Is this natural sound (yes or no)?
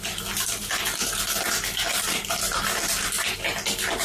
yes